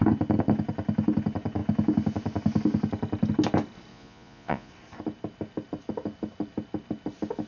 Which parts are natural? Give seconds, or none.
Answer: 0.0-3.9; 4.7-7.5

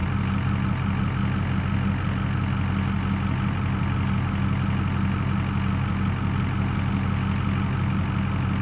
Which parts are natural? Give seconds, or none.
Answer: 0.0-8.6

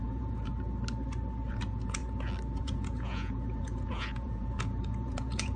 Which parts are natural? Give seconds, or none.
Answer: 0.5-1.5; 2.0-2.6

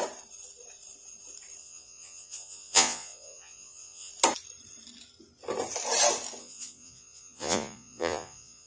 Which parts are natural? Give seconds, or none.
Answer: 0.0-1.6; 4.1-6.4

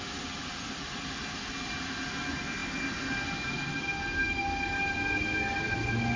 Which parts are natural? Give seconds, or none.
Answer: 0.0-6.2

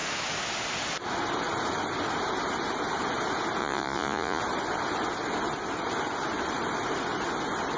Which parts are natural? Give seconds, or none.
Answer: 0.0-3.6; 4.4-7.8